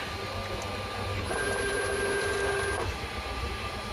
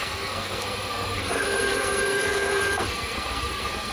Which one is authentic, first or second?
first